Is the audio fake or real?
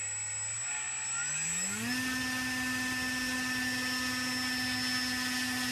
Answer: real